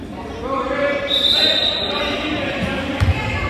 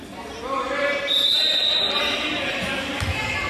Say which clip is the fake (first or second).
first